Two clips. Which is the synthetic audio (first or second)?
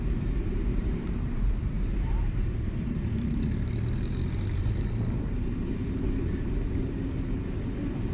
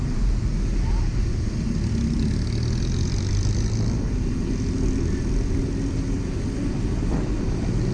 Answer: first